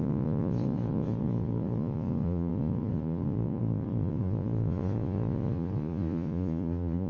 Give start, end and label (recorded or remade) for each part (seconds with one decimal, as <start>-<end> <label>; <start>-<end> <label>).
0.0-7.1 remade